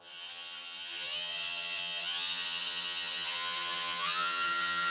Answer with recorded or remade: remade